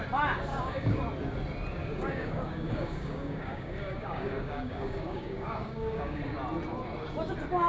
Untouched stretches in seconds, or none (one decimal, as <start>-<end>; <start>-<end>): 0.0-0.5; 1.0-1.8; 6.2-7.7